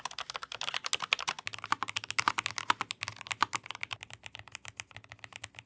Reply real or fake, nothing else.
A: real